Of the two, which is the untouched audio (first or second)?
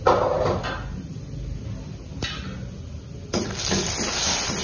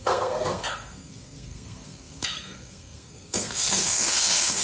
first